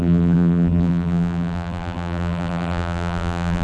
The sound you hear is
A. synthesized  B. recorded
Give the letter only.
A